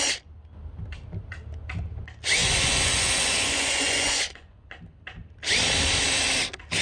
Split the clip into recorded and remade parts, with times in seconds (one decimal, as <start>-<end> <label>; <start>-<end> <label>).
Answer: 0.0-2.4 recorded; 2.4-4.8 remade; 4.8-6.8 recorded